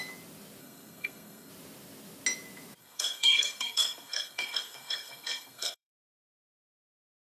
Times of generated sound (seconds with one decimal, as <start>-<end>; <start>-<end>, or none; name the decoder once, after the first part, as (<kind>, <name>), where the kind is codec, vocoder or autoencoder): 0.6-1.5 (codec, SNAC); 2.8-6.6